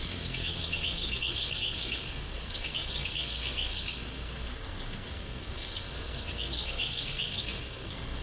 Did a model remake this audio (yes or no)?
yes